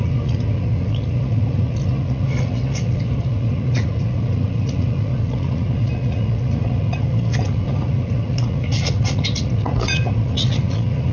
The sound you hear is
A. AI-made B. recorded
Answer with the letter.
A